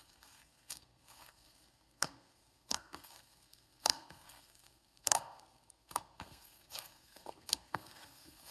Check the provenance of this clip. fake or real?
fake